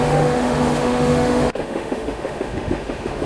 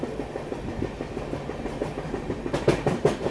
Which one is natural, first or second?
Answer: second